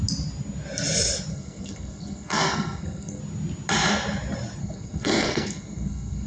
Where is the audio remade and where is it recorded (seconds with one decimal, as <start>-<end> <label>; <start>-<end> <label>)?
0.0-1.3 recorded; 1.3-3.2 remade; 3.2-4.6 recorded; 4.6-6.3 remade